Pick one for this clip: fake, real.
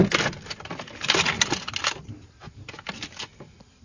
real